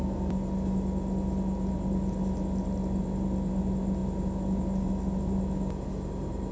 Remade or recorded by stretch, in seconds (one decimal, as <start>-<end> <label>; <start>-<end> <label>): 0.0-6.5 recorded